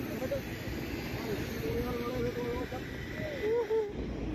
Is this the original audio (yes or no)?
yes